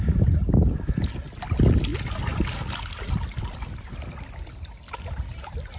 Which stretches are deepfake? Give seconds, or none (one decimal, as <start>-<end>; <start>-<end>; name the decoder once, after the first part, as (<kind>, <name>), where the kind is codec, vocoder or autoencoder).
none